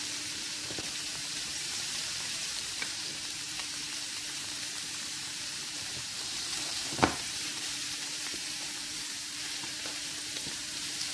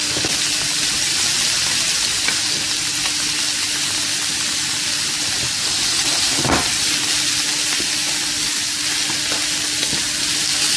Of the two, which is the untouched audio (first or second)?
second